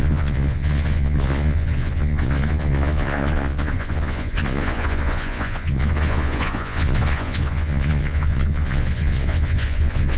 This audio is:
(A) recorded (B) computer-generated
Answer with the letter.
B